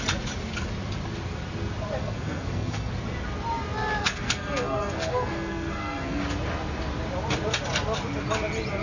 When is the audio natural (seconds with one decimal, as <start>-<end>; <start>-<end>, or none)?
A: 0.0-2.0; 2.9-4.0; 6.2-8.8

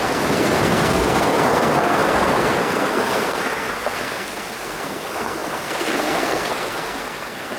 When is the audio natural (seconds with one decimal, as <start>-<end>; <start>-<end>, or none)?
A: none